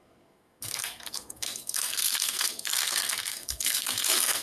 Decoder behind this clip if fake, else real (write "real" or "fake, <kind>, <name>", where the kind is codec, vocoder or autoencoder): fake, codec, SNAC